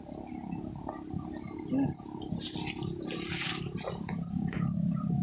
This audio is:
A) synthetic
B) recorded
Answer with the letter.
B